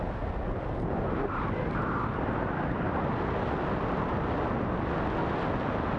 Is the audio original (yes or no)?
yes